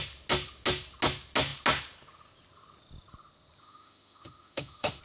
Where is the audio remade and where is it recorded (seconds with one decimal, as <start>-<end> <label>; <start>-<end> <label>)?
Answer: 0.0-3.6 recorded; 3.6-5.0 remade

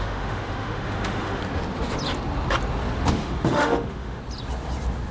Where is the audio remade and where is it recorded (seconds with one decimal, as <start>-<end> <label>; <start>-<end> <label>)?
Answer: 0.0-1.4 remade; 1.4-3.1 recorded; 3.1-4.2 remade; 4.2-5.1 recorded

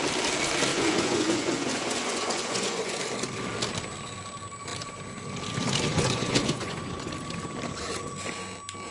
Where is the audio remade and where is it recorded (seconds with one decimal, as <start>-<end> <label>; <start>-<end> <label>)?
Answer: 0.0-0.7 recorded; 0.7-3.0 remade; 3.0-5.9 recorded; 5.9-7.1 remade; 7.1-8.9 recorded

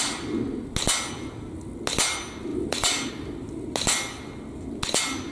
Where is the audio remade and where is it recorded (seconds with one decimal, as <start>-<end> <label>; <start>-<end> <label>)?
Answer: 0.0-2.5 recorded; 2.5-3.1 remade; 3.1-5.3 recorded

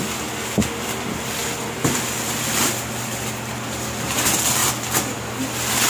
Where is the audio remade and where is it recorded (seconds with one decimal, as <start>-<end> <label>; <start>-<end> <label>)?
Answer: 0.0-5.9 recorded